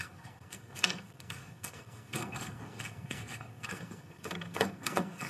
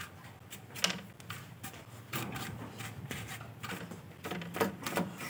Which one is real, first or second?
second